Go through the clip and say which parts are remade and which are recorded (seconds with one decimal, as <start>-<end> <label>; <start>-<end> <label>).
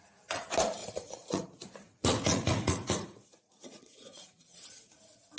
0.0-0.8 recorded; 0.8-1.4 remade; 1.4-1.8 recorded; 1.8-5.0 remade; 5.0-5.4 recorded